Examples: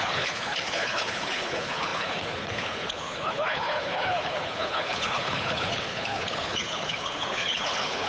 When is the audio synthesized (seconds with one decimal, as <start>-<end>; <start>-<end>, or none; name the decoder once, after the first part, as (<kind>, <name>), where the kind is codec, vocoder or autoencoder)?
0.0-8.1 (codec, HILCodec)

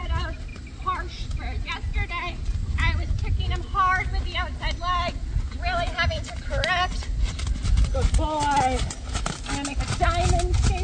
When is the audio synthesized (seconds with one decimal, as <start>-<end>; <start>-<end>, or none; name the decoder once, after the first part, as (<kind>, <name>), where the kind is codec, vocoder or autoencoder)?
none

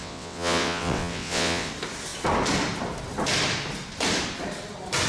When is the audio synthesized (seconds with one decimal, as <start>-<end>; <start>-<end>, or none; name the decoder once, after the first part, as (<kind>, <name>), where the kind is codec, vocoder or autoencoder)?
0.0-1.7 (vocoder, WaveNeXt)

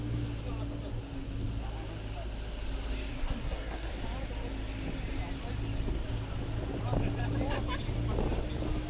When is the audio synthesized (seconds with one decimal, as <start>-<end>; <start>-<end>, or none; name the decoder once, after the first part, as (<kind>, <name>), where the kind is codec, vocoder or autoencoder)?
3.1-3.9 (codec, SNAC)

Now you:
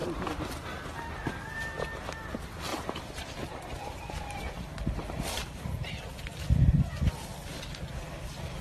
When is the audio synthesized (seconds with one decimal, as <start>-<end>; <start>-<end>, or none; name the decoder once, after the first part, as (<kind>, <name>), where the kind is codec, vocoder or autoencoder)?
0.0-1.1 (vocoder, BigVGAN v2); 2.7-4.2; 5.0-6.0